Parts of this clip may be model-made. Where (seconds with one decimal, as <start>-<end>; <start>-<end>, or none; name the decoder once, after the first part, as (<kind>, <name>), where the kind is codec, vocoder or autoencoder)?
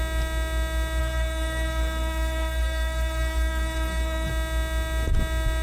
1.0-4.3 (codec, SNAC)